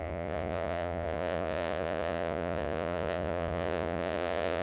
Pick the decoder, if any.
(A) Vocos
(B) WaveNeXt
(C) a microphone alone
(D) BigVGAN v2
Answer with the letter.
A